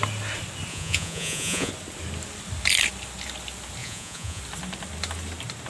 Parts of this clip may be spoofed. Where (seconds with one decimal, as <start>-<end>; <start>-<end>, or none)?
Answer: 0.7-1.7; 3.8-4.4